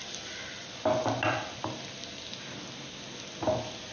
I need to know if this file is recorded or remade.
recorded